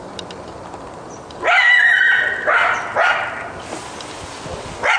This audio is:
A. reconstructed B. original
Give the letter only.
B